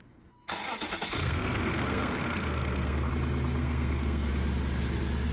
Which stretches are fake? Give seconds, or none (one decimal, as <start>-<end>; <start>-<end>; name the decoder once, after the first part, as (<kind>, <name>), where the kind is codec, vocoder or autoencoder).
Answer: 1.2-3.1 (codec, SNAC); 3.6-4.3

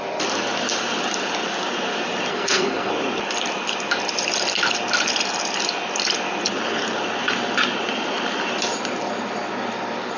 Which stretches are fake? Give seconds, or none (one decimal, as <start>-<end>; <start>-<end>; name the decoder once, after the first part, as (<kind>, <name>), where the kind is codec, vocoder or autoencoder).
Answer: 2.3-2.9 (codec, SNAC)